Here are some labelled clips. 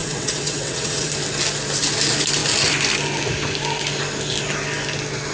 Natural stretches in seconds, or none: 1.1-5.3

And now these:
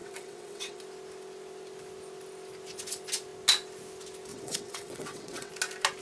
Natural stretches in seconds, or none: 0.8-4.3; 5.5-6.0

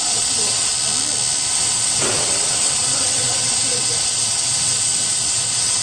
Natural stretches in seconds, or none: 0.7-1.5

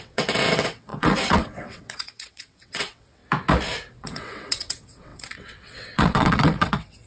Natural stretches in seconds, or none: 3.2-4.0

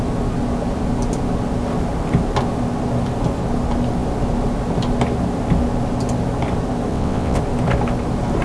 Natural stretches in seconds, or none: 0.0-6.9; 7.4-8.4

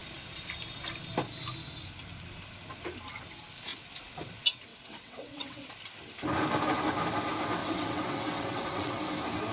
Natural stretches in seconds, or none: 0.0-4.7; 5.7-7.6; 9.0-9.5

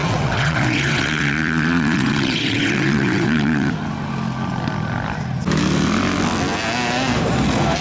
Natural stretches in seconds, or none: 3.7-7.8

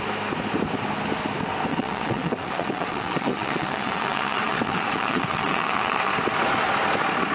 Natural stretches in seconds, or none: 0.0-1.7; 6.1-7.3